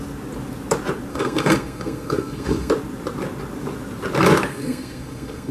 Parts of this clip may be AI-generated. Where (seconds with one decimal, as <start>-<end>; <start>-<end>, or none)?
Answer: 1.1-2.7; 4.5-5.5